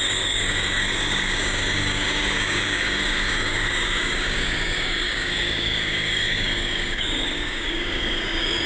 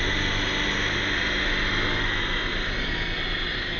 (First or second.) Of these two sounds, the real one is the second